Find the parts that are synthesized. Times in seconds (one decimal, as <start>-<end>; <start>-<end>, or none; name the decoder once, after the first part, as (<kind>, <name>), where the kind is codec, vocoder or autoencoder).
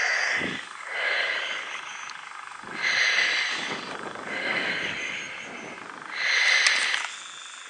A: 0.0-2.8 (codec, DAC); 3.5-5.2